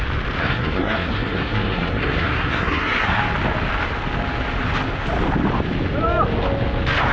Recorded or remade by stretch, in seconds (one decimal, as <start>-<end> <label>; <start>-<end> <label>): 0.0-0.4 recorded; 0.4-3.2 remade; 3.2-7.1 recorded